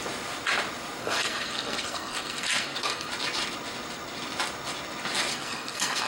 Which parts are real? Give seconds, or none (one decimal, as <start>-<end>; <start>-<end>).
0.0-1.0; 3.1-5.3